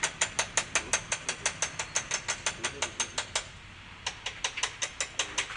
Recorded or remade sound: recorded